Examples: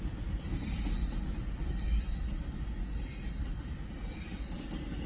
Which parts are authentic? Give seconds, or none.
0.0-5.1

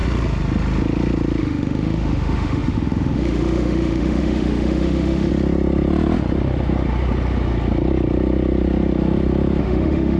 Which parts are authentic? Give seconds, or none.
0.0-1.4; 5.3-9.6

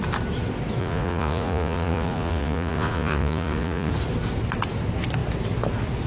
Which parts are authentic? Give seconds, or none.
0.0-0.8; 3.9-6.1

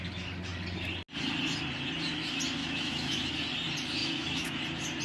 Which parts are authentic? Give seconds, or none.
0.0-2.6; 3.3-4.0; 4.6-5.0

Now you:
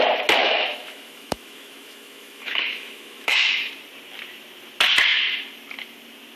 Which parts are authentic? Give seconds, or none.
0.0-0.4; 3.7-6.4

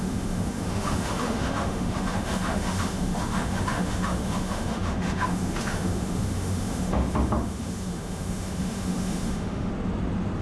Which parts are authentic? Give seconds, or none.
9.7-10.4